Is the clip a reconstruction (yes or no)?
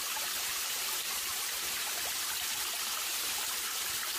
no